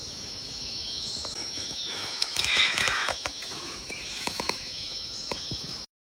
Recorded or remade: remade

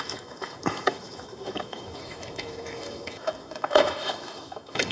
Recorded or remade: remade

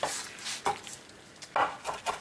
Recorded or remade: recorded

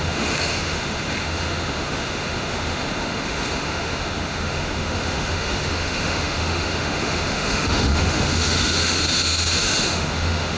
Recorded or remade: remade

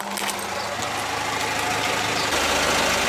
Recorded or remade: recorded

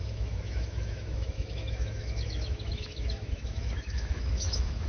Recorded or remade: remade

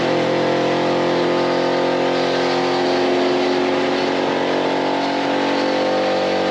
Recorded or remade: recorded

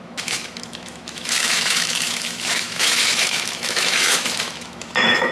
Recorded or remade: remade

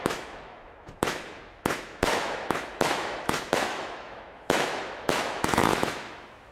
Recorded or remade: remade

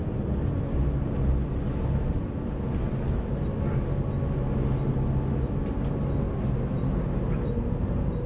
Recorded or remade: recorded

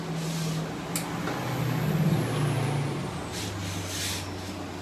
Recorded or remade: recorded